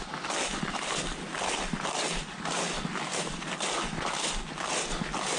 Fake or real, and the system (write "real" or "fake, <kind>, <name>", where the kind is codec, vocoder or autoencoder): real